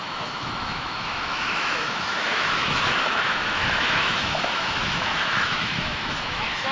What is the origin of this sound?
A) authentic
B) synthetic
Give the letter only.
B